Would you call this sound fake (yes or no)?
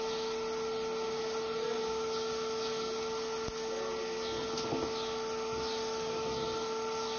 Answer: no